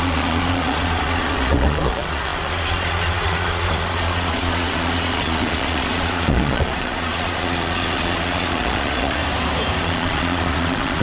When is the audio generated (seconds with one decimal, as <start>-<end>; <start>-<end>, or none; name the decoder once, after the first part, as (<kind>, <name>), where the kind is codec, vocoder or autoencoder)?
0.0-9.2 (vocoder, Vocos); 9.8-11.0